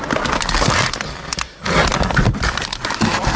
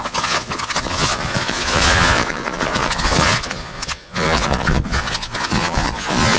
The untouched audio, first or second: first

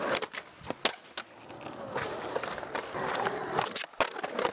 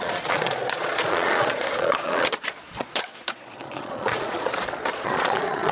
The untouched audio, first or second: first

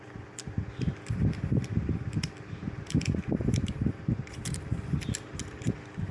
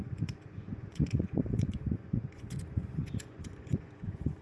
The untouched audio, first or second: first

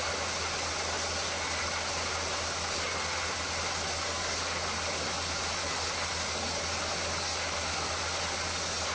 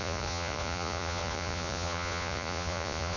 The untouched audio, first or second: first